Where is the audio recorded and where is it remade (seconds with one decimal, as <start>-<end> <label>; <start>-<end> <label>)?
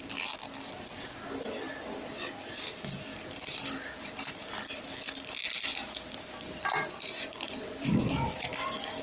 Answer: 0.0-3.1 remade; 3.1-4.5 recorded; 4.5-9.0 remade